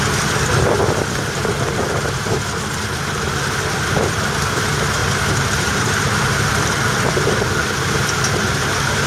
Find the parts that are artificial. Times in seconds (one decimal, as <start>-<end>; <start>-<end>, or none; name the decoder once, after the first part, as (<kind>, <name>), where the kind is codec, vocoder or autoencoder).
5.0-9.1 (vocoder, BigVGAN v2)